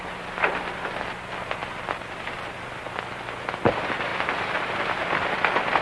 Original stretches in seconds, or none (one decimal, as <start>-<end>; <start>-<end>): 0.0-5.8